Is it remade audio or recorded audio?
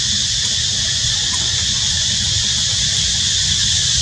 remade